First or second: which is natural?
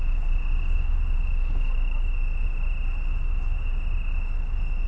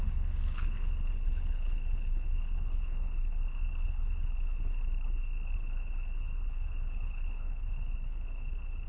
first